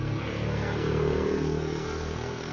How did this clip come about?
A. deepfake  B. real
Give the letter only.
A